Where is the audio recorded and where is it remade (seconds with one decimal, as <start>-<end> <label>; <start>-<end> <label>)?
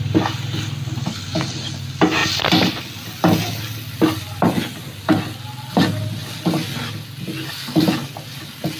0.0-8.8 recorded